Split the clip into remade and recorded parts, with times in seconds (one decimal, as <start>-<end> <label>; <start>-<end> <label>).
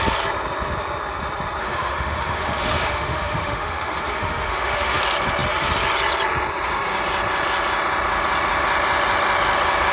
0.0-1.6 recorded; 1.6-5.0 remade; 5.0-9.9 recorded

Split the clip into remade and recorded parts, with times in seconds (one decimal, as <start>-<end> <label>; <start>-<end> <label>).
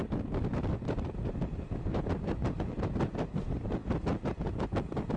0.0-5.2 recorded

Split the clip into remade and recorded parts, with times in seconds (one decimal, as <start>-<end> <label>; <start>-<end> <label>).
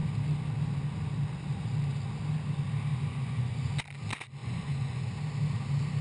0.0-2.9 recorded; 2.9-3.7 remade; 3.7-4.4 recorded; 4.4-5.1 remade; 5.1-6.0 recorded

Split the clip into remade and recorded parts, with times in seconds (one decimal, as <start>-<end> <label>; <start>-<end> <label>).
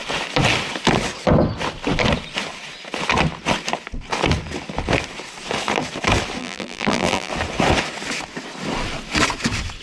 0.0-6.4 recorded; 6.4-7.3 remade; 7.3-9.8 recorded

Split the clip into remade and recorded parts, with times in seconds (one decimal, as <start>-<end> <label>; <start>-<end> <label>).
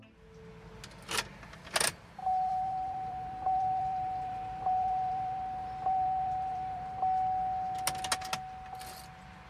0.0-2.2 recorded; 2.2-6.8 remade; 6.8-9.5 recorded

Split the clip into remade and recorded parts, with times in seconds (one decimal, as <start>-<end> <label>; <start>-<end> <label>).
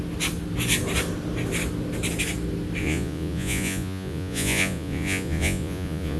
0.0-2.8 recorded; 2.8-6.2 remade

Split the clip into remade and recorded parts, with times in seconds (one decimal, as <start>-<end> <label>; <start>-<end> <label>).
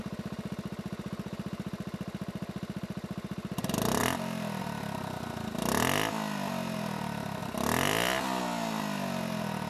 0.0-4.0 recorded; 4.0-4.6 remade; 4.6-7.4 recorded; 7.4-8.4 remade; 8.4-9.7 recorded